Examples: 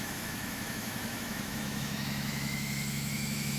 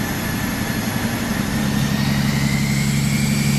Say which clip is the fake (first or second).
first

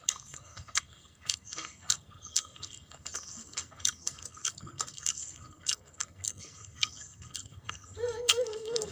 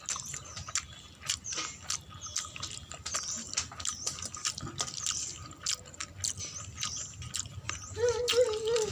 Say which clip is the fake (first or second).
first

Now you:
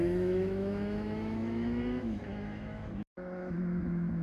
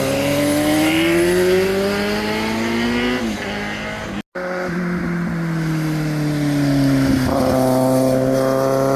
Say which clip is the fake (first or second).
first